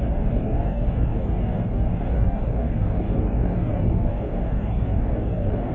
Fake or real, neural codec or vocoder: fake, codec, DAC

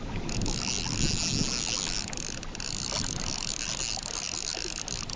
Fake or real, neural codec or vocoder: real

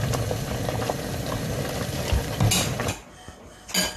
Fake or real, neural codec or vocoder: real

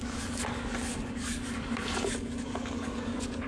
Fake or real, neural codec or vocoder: fake, codec, DAC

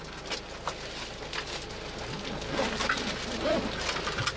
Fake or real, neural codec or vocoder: real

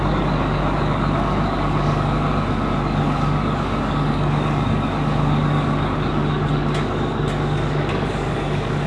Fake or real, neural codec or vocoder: fake, codec, DAC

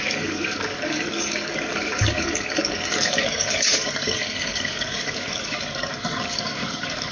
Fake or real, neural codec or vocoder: fake, codec, DAC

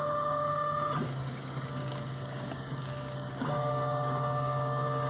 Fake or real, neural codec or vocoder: fake, codec, DAC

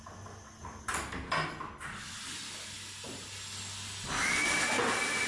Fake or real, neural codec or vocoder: real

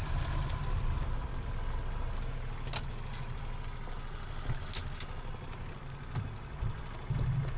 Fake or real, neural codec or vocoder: real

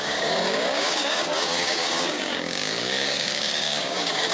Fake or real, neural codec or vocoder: fake, codec, DAC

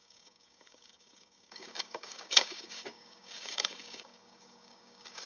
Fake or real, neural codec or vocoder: fake, codec, DAC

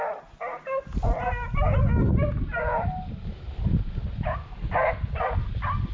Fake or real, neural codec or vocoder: real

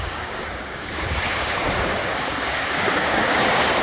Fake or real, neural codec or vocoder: fake, codec, DAC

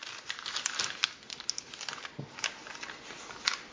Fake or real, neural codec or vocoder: real